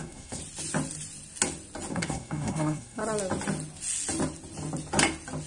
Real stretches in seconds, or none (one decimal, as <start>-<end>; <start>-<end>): 0.4-1.9; 3.0-5.5